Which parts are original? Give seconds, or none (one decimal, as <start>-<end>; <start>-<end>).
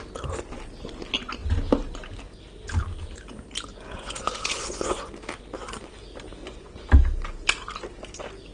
0.0-3.7; 5.1-6.4; 6.9-8.5